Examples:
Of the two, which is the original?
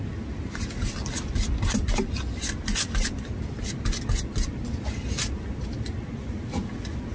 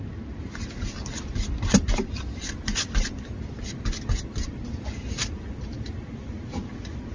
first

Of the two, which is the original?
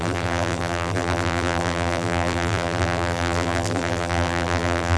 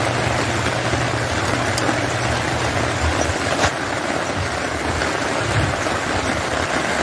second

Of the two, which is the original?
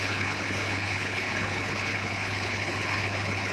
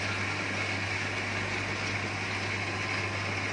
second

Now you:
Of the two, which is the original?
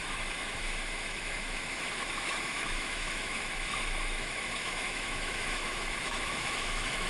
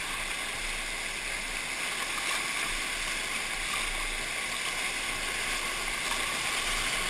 second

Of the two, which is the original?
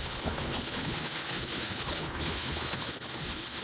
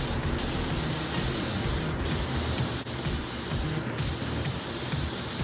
second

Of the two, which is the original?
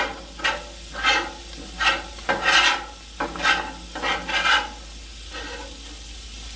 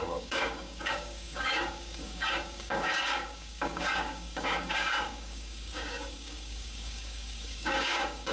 first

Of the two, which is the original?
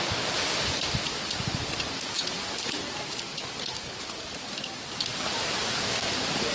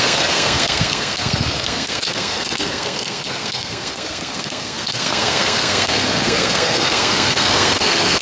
first